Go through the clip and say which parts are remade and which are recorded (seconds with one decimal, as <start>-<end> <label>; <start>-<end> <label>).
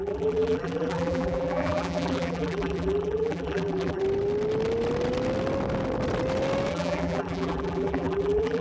0.0-4.0 remade; 4.0-6.7 recorded; 6.7-8.6 remade